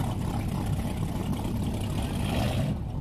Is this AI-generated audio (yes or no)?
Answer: no